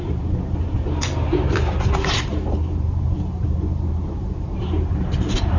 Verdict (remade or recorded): remade